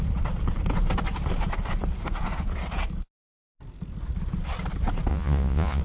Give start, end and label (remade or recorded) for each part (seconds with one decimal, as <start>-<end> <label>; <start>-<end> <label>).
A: 0.0-5.1 recorded; 5.1-5.8 remade